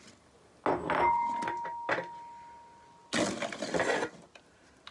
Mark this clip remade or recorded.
recorded